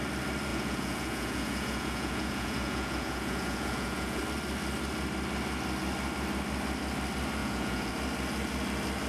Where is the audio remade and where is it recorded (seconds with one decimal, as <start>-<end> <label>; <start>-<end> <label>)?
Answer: 0.0-0.5 recorded; 0.5-4.2 remade; 4.2-7.4 recorded; 7.4-7.9 remade; 7.9-9.1 recorded